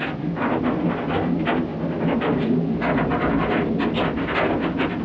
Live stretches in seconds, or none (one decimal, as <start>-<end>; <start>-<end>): 0.0-5.0